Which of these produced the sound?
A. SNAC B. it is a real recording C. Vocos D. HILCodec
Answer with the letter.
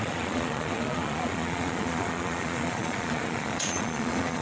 C